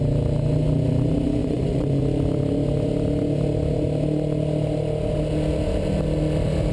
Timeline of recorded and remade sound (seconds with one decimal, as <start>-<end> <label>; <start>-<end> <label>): 0.0-1.4 recorded; 1.4-2.0 remade; 2.0-6.7 recorded